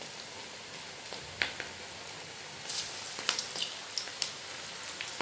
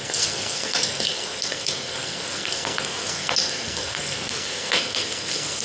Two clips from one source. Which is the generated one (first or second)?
second